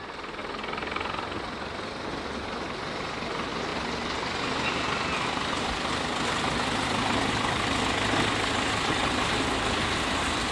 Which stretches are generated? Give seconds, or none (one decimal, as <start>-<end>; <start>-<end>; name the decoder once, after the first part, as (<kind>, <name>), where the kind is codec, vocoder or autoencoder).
none